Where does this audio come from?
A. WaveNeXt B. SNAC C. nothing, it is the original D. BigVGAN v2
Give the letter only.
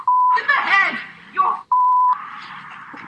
D